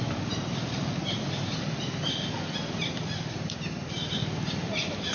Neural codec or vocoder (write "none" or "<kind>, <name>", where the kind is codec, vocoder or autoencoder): none